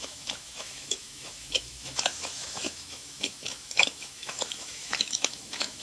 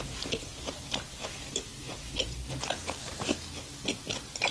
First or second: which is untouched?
second